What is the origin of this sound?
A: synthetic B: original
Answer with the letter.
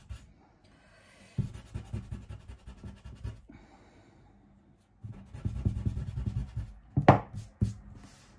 B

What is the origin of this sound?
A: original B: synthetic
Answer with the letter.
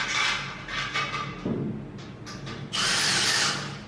A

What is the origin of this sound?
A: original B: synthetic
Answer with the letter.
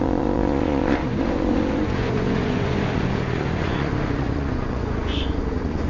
B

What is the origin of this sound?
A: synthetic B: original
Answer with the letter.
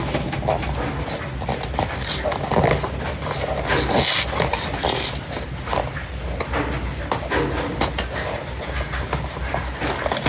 B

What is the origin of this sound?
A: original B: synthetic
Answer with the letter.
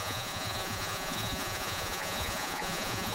B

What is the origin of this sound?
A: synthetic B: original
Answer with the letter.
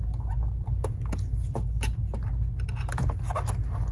B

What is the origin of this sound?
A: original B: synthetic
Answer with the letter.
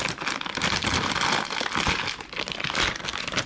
A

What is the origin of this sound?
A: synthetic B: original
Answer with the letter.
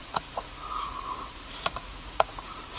A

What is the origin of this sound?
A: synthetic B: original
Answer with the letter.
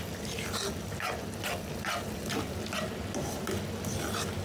B